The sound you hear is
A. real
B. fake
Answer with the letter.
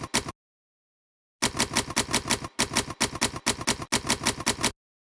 A